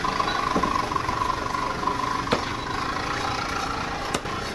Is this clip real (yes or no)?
no